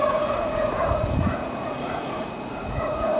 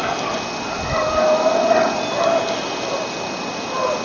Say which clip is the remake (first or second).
first